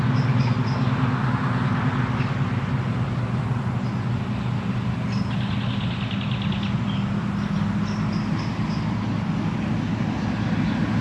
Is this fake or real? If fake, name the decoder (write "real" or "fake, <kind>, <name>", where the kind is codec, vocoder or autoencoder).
real